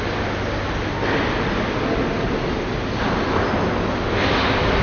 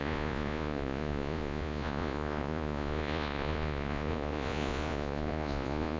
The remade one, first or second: second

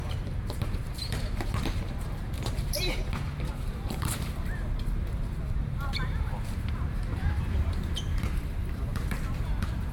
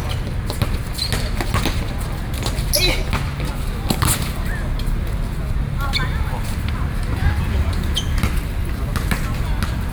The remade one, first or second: first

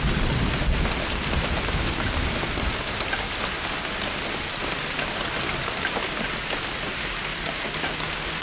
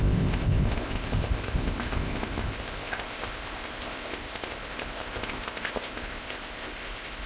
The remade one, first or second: second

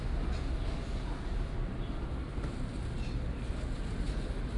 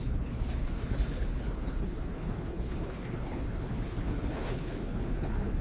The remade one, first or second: second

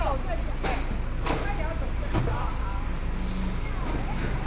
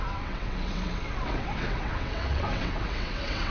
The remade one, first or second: second